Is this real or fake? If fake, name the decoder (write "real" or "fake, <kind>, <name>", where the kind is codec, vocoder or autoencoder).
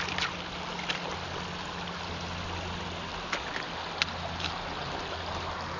real